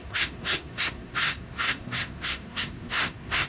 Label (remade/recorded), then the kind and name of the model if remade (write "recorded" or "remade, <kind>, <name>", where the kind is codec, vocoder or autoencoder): remade, codec, SNAC